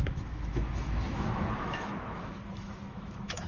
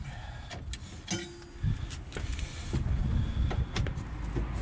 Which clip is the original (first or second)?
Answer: second